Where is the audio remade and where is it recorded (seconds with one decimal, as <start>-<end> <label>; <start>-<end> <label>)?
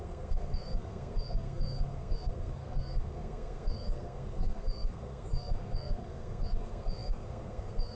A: 0.0-8.0 remade